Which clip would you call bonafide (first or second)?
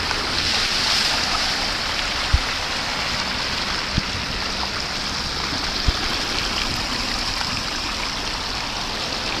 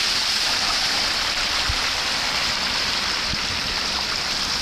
first